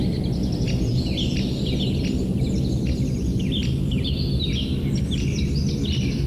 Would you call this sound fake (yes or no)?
no